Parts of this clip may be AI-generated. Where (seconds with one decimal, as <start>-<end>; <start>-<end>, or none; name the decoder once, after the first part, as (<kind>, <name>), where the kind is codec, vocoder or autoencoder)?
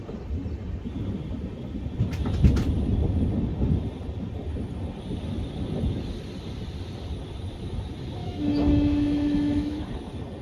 8.2-9.8 (autoencoder, DAC-VAE)